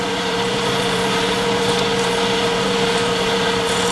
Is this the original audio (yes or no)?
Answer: no